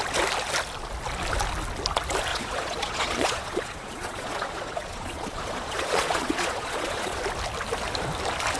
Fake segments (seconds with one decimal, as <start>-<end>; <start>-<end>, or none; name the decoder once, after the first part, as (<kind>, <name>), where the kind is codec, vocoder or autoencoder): 2.3-7.2 (vocoder, Vocos)

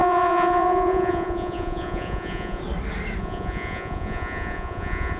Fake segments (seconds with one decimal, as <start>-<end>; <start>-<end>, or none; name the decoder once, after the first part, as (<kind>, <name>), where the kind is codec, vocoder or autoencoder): 0.0-2.6 (vocoder, Vocos); 3.2-5.2

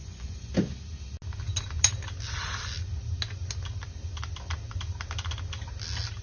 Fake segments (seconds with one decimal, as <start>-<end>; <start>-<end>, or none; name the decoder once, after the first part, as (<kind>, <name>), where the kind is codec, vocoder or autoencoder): 0.0-0.5 (vocoder, Vocos)

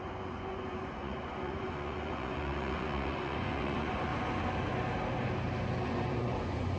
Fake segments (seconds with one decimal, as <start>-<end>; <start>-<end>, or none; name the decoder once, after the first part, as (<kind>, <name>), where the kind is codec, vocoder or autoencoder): 0.0-4.1 (vocoder, Vocos); 5.8-6.8

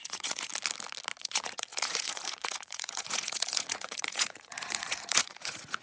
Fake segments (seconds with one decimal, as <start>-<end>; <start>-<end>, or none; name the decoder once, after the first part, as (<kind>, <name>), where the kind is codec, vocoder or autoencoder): 0.0-0.5 (vocoder, Vocos); 1.2-5.8

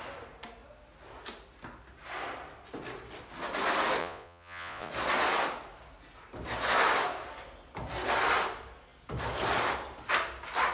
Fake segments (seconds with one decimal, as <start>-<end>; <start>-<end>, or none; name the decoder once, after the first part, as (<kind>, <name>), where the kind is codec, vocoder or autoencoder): 4.0-4.9 (vocoder, Vocos)

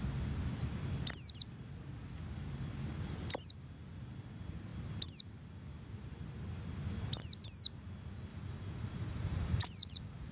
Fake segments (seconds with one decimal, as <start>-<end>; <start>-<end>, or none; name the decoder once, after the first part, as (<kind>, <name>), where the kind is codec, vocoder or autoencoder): 8.3-10.3 (vocoder, Vocos)